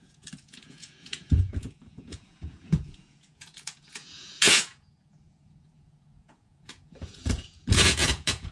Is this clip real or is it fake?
fake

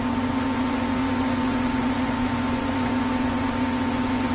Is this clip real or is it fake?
fake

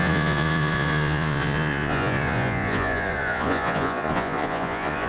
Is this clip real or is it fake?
fake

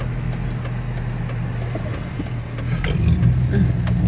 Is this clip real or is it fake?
real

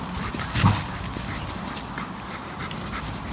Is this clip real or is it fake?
real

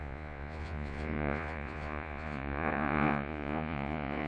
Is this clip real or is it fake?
fake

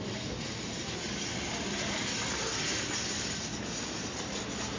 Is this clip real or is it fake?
real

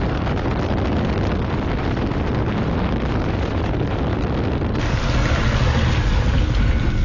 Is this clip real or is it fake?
real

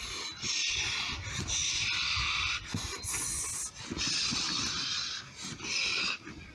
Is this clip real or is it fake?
real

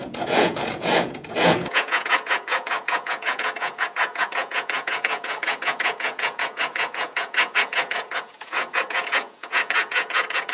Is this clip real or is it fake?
fake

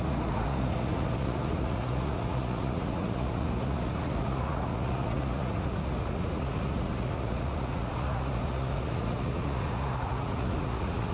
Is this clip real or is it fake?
fake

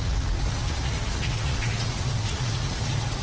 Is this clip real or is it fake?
fake